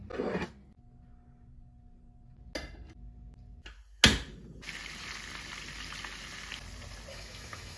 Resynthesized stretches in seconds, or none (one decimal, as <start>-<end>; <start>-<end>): 7.1-7.8